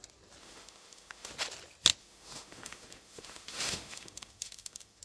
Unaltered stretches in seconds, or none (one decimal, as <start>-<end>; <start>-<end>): 0.0-0.4; 1.3-2.0